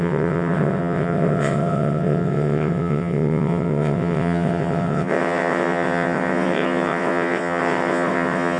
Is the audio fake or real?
fake